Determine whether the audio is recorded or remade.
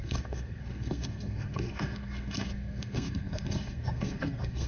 remade